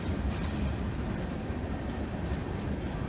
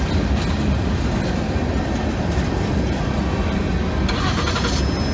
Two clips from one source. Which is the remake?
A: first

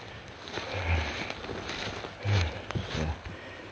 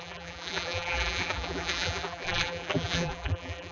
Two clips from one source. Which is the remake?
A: second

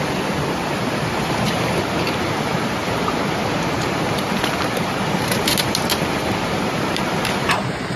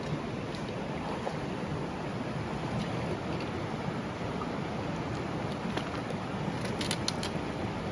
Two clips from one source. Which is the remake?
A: first